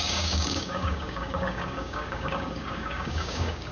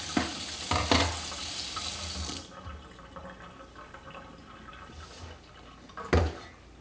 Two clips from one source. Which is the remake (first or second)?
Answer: first